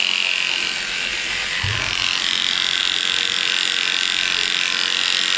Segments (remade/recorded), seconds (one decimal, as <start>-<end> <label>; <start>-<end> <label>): 0.0-1.1 recorded; 1.1-2.8 remade; 2.8-5.4 recorded

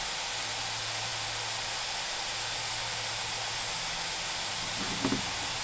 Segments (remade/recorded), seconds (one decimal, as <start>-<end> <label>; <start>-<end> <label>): 0.0-5.6 recorded